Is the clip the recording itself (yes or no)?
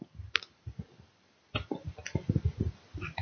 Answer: no